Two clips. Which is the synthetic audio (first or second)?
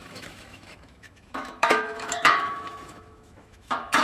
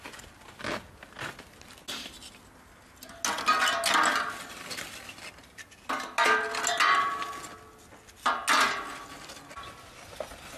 first